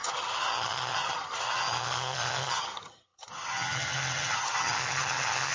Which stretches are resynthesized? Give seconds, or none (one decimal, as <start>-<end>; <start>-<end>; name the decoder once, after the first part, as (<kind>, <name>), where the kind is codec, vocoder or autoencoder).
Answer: 0.0-5.5 (vocoder, HiFi-GAN)